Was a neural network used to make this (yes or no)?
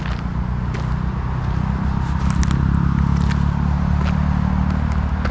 no